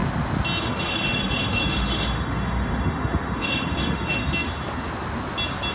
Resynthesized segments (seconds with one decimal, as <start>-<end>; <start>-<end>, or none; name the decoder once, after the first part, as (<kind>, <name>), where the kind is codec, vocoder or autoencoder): 0.6-4.2 (autoencoder, DAC-VAE)